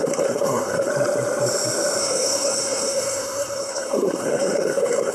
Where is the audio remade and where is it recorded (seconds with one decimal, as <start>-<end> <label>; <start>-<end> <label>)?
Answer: 0.0-0.9 remade; 0.9-2.0 recorded; 2.0-5.1 remade